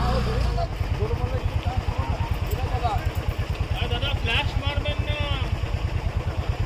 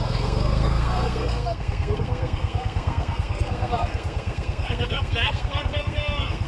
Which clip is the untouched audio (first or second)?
first